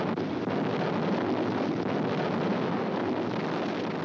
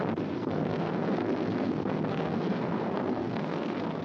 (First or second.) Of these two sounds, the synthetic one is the second